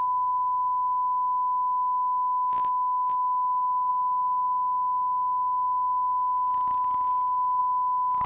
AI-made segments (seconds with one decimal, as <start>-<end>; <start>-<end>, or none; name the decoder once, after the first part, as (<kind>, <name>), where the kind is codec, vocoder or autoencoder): none